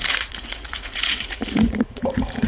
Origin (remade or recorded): remade